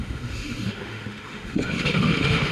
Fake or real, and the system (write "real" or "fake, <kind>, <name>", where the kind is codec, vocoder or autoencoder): fake, autoencoder, DAC-VAE